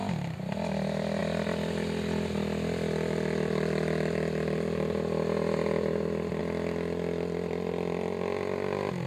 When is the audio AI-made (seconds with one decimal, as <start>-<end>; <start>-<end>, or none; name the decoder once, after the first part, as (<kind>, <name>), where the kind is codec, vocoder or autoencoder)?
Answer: none